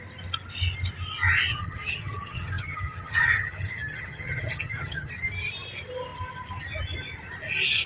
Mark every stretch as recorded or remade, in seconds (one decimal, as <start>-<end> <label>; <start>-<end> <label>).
0.0-1.5 recorded; 1.5-5.1 remade; 5.1-7.9 recorded